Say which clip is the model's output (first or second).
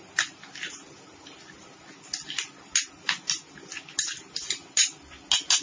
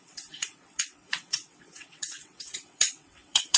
second